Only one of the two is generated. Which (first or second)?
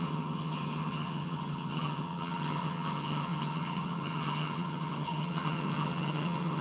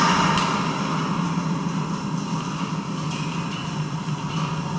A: first